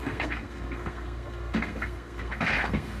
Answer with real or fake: fake